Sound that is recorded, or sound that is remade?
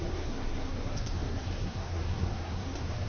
remade